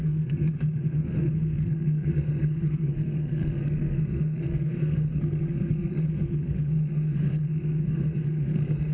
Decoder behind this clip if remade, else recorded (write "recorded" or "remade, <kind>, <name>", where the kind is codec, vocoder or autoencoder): remade, codec, SNAC